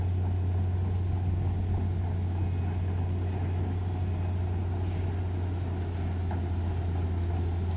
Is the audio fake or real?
real